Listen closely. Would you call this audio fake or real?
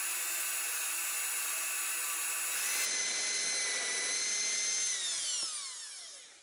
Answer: real